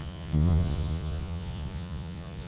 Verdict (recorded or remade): remade